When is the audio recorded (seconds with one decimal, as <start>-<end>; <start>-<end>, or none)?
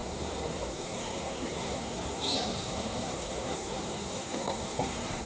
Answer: none